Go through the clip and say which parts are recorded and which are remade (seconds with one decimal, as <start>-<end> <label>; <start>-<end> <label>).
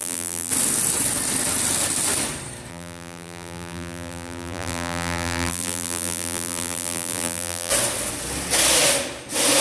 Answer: 0.0-0.5 remade; 0.5-2.7 recorded; 2.7-7.7 remade; 7.7-9.6 recorded